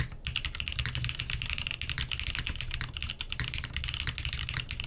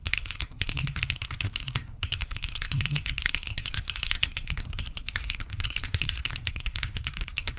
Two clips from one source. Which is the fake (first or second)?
second